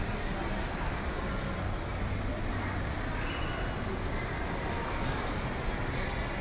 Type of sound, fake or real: real